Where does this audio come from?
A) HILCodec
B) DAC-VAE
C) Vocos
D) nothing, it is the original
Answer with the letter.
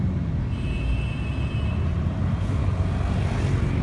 D